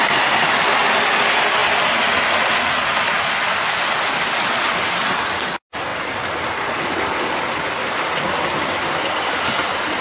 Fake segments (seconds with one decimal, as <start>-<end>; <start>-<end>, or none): none